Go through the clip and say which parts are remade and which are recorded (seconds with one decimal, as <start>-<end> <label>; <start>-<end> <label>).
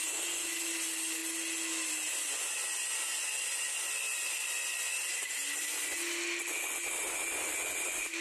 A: 0.0-8.2 recorded